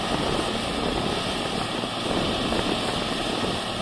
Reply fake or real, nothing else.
real